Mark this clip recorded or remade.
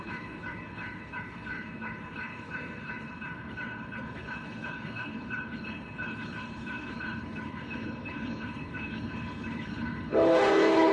remade